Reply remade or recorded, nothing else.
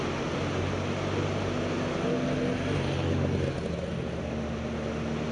recorded